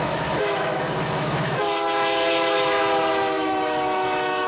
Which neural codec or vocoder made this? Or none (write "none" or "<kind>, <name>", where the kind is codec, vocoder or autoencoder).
autoencoder, DAC-VAE